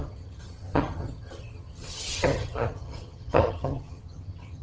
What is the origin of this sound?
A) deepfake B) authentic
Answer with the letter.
A